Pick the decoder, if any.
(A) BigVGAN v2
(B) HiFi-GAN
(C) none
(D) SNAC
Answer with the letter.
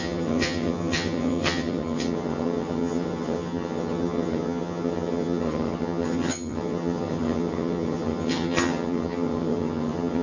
B